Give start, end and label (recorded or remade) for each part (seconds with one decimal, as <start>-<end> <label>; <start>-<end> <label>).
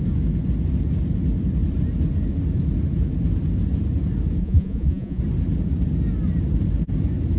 0.0-4.4 recorded; 4.4-5.2 remade; 5.2-7.4 recorded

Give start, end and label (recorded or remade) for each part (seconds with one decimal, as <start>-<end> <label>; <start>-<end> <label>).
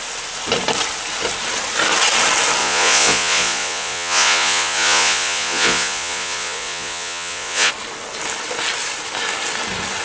0.0-2.6 recorded; 2.6-7.7 remade; 7.7-10.0 recorded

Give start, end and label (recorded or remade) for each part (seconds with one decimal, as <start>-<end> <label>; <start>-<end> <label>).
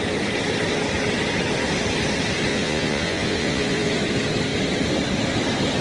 0.0-2.5 recorded; 2.5-3.9 remade; 3.9-5.8 recorded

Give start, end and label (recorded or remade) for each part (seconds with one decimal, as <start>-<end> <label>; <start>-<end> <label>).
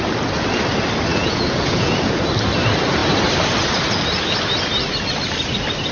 0.0-1.1 recorded; 1.1-2.2 remade; 2.2-5.9 recorded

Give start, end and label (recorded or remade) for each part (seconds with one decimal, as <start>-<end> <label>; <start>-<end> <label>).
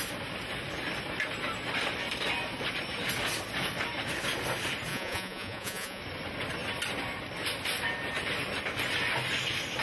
0.0-4.9 recorded; 4.9-6.0 remade; 6.0-9.8 recorded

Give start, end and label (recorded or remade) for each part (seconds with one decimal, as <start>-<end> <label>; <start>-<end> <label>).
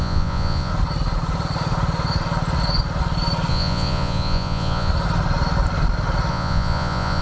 0.0-0.7 remade; 0.7-3.5 recorded; 3.5-4.9 remade; 4.9-6.3 recorded; 6.3-7.2 remade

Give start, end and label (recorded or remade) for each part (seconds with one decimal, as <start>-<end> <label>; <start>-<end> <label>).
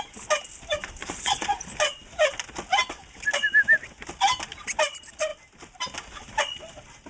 0.0-1.0 recorded; 1.0-1.6 remade; 1.6-7.1 recorded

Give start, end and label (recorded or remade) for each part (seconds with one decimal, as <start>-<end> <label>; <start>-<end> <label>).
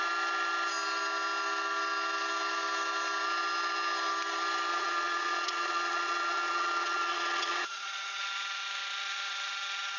0.0-4.7 recorded; 4.7-8.2 remade; 8.2-10.0 recorded